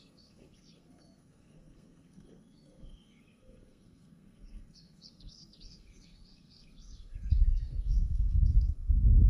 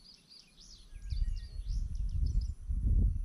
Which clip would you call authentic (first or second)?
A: second